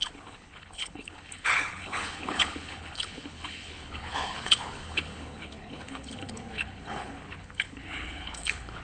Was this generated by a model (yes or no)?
yes